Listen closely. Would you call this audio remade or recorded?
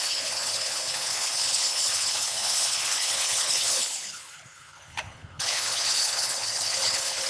remade